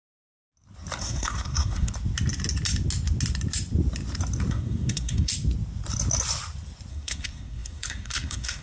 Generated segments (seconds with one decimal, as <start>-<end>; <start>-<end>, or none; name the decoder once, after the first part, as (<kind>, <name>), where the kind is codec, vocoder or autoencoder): 1.0-1.9 (codec, SNAC); 4.5-5.3; 6.9-8.6